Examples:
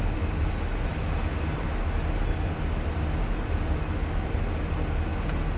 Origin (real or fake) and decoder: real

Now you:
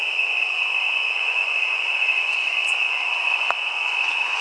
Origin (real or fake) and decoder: fake, vocoder, Vocos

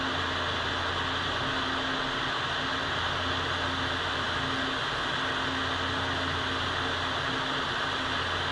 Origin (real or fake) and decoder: real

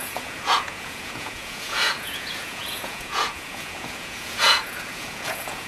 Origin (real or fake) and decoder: fake, vocoder, Vocos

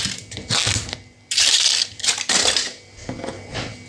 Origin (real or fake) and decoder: real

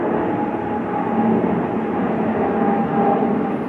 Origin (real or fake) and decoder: real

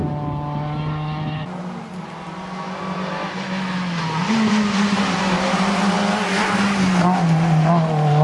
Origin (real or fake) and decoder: real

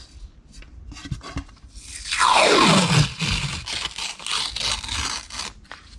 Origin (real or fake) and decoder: real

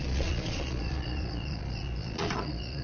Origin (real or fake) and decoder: fake, vocoder, Vocos